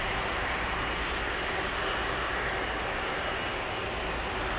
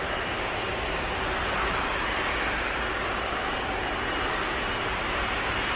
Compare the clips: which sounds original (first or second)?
first